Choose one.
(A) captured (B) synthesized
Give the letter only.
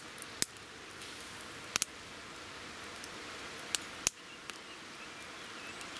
A